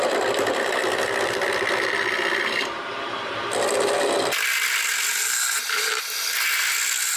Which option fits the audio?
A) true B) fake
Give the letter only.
A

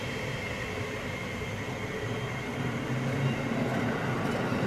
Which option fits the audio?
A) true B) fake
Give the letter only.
A